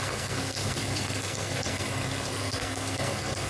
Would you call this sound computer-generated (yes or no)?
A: yes